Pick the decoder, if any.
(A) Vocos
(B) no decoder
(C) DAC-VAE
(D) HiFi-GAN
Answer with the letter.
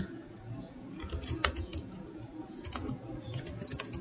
A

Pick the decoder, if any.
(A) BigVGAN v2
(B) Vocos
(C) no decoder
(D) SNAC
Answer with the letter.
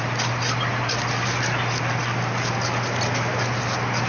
C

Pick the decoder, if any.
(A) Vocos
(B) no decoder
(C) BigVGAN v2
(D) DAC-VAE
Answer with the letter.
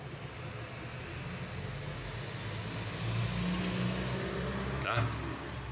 B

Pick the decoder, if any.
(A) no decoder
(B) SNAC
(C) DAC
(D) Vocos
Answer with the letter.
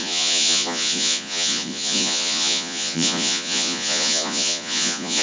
D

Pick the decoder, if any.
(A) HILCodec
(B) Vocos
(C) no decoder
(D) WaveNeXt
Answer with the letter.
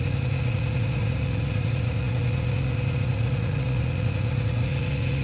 B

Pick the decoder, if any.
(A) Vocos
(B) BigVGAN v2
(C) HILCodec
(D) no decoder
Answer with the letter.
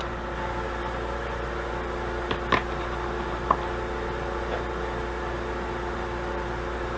D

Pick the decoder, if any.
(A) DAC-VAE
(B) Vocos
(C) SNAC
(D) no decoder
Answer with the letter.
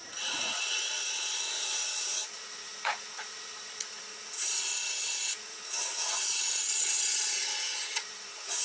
B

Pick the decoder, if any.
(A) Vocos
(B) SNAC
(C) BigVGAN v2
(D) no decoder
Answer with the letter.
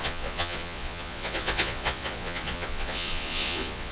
A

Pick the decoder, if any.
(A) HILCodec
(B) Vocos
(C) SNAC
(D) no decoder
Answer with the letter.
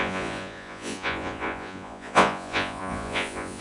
B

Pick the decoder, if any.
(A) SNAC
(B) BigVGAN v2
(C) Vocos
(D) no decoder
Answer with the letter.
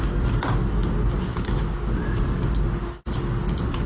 D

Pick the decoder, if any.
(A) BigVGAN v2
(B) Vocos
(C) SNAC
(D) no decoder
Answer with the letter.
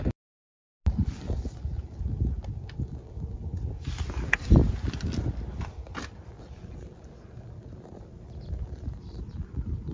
D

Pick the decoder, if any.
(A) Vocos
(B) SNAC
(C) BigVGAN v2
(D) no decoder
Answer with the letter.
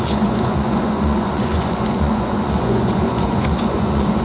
A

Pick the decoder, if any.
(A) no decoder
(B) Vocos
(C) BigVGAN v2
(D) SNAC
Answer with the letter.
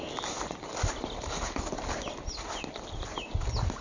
A